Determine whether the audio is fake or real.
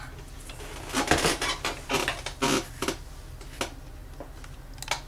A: real